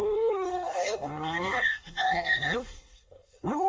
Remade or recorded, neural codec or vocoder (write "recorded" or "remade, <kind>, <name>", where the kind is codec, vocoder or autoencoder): remade, codec, SNAC